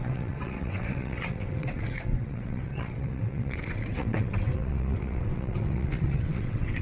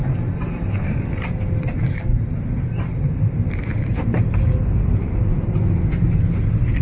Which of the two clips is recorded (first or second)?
second